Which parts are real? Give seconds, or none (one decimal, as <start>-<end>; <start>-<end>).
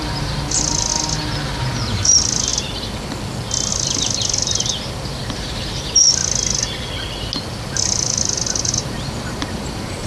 0.9-1.6; 2.5-3.7; 6.2-7.7